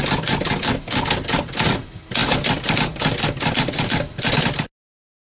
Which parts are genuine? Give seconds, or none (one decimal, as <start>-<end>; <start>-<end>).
0.0-5.3